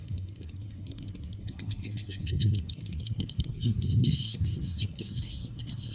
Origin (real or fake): fake